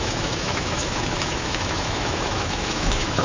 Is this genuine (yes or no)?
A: no